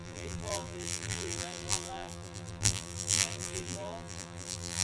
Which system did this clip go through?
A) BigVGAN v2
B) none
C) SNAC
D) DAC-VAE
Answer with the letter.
A